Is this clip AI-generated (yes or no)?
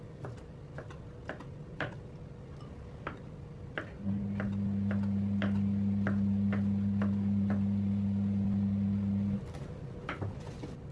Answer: no